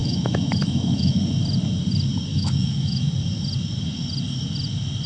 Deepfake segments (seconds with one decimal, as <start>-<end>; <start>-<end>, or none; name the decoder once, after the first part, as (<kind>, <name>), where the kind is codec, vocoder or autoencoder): 0.0-1.2 (autoencoder, DAC-VAE); 2.3-3.1